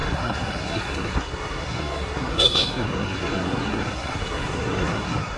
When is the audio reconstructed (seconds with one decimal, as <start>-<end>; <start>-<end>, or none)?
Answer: 0.0-5.4